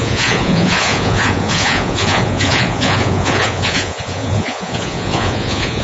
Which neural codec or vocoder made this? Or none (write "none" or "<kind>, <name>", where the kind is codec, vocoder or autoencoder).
vocoder, Vocos